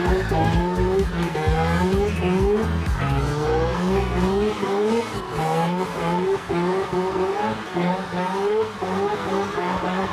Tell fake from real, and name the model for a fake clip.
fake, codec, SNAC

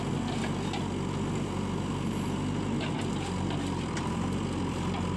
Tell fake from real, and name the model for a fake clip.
real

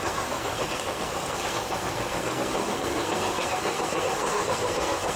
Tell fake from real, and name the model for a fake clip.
fake, codec, SNAC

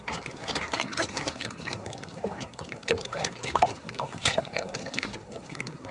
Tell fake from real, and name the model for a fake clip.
fake, codec, SNAC